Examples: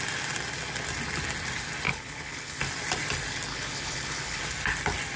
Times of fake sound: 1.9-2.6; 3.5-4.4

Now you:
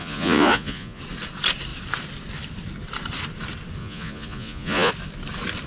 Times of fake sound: 0.0-1.0; 3.8-4.9

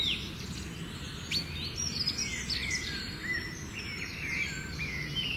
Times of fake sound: 3.2-4.8

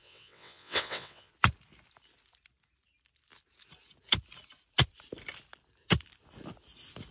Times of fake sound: 0.0-1.3

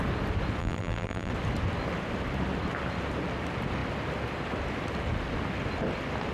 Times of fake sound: 0.6-1.3